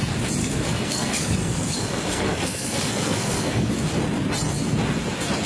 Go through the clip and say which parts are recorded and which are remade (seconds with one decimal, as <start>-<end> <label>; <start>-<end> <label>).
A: 0.0-0.4 recorded; 0.4-3.7 remade; 3.7-5.5 recorded